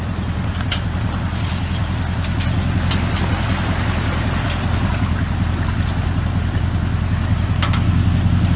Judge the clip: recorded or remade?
recorded